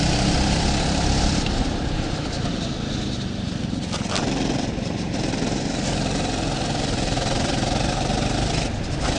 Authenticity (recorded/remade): remade